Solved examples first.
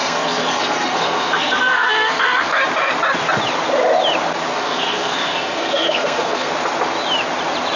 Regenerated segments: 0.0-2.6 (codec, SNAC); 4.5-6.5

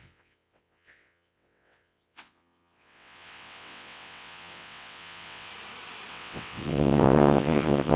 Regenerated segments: 0.0-5.5 (vocoder, WaveNeXt); 6.1-8.0

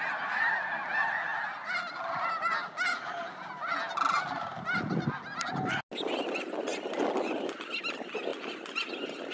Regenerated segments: none

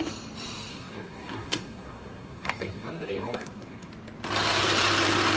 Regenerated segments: 0.7-3.9 (codec, SNAC)

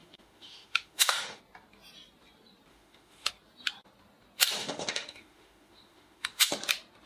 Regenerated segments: 0.0-1.4 (autoencoder, DAC-VAE); 2.7-3.3; 4.6-6.5